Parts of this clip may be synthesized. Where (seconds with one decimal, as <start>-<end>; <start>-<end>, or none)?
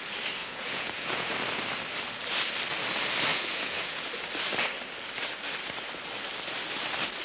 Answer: 0.4-1.3; 3.3-4.1